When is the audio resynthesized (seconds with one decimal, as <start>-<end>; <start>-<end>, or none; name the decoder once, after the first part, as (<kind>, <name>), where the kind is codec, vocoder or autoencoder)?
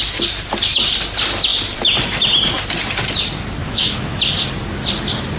3.6-4.2 (autoencoder, DAC-VAE)